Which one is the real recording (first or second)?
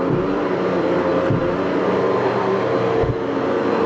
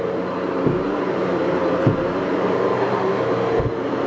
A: first